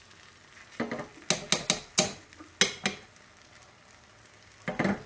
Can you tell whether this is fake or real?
real